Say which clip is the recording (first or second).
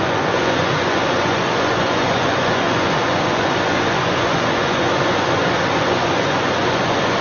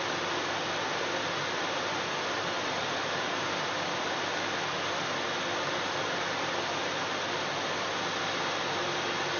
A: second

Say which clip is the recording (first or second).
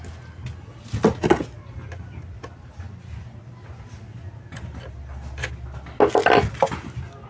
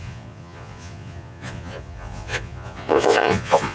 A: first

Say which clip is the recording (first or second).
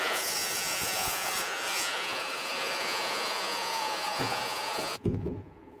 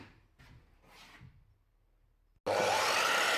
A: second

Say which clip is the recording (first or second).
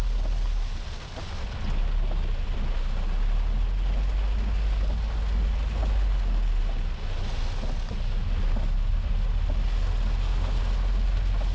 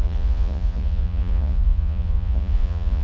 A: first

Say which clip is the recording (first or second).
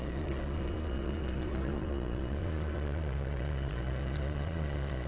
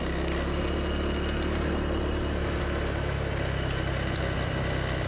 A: second